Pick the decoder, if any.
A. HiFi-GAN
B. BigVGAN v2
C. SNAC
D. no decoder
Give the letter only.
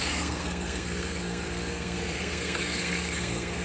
C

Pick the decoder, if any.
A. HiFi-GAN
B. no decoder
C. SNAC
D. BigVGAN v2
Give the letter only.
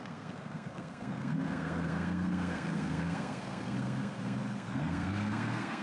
C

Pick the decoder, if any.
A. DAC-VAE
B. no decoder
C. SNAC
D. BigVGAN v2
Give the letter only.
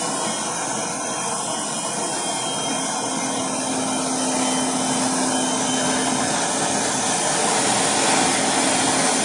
B